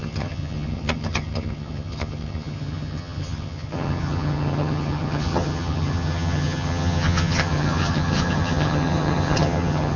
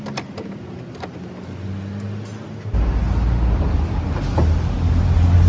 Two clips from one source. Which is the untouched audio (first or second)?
second